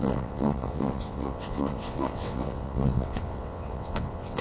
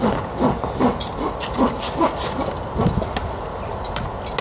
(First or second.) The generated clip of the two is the first